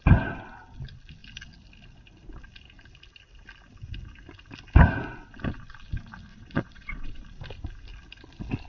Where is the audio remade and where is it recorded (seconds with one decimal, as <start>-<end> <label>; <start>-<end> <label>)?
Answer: 0.0-6.3 recorded; 6.3-7.2 remade; 7.2-8.7 recorded

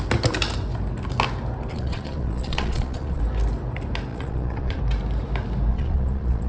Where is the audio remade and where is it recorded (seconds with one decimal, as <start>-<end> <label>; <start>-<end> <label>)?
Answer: 0.0-1.7 recorded; 1.7-3.2 remade; 3.2-4.1 recorded; 4.1-4.8 remade; 4.8-5.7 recorded; 5.7-6.5 remade

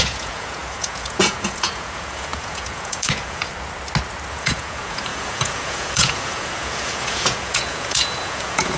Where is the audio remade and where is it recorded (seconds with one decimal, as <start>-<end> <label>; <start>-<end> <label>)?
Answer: 0.0-3.5 remade; 3.5-4.3 recorded; 4.3-8.8 remade

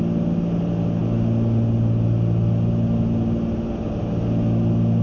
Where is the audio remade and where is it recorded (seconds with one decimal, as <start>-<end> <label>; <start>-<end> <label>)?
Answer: 0.0-5.0 recorded

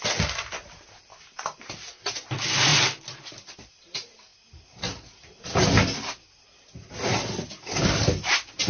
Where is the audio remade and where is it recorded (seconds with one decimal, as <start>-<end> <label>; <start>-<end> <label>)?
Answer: 0.0-8.7 recorded